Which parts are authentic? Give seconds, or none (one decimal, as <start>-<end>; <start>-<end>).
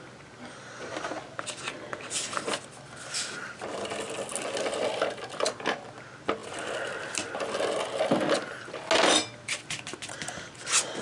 0.0-11.0